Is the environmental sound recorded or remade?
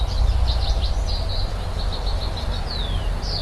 recorded